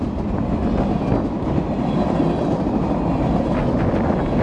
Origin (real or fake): real